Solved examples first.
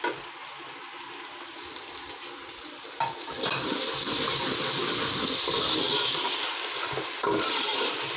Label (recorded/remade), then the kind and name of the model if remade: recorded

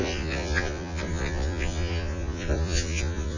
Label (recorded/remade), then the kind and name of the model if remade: remade, vocoder, Vocos